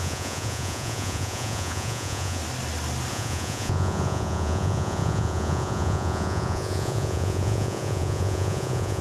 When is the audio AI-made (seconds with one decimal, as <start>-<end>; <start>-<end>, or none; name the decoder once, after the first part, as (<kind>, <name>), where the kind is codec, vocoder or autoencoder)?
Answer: 0.0-2.4 (vocoder, Vocos); 3.1-9.0